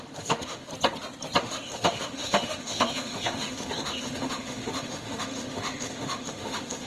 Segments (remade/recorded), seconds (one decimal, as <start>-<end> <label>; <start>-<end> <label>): 0.0-0.7 remade; 0.7-1.4 recorded; 1.4-6.9 remade